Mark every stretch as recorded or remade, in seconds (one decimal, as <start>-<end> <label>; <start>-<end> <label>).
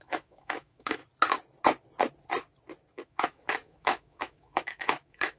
0.0-1.0 remade; 1.0-2.9 recorded; 2.9-5.4 remade